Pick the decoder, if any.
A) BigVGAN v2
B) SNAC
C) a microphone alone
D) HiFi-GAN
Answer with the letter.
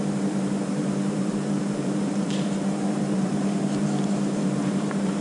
A